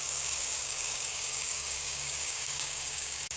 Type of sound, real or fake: fake